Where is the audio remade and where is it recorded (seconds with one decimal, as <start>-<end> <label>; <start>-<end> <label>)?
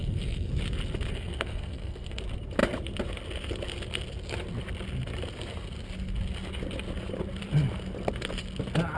0.0-0.5 remade; 0.5-1.1 recorded; 1.1-2.2 remade; 2.2-9.0 recorded